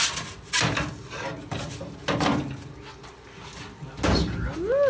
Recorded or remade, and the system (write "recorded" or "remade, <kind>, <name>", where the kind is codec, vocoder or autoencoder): recorded